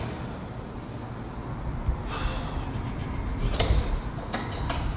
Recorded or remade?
recorded